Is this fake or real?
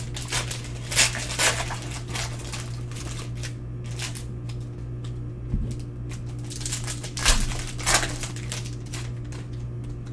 real